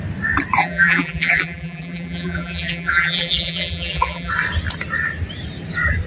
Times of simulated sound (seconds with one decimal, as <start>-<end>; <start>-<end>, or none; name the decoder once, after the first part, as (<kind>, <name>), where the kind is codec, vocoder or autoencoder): 0.6-4.3 (vocoder, BigVGAN v2)